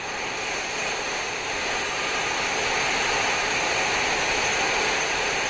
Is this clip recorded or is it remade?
remade